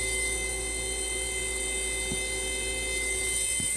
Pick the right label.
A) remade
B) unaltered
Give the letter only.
B